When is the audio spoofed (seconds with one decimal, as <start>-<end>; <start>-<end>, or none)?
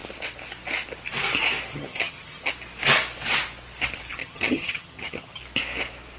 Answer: 1.7-2.5; 4.2-5.4